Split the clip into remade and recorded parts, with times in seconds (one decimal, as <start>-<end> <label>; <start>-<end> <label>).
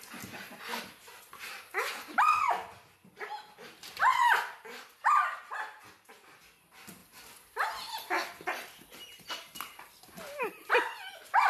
0.0-4.2 recorded; 4.2-5.5 remade; 5.5-11.5 recorded